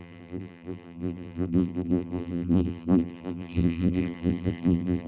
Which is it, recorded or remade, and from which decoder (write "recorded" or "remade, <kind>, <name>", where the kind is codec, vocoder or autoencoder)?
remade, vocoder, BigVGAN v2